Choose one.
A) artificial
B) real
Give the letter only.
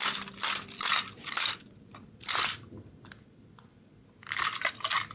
B